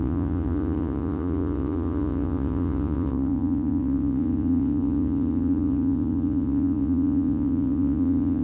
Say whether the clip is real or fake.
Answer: fake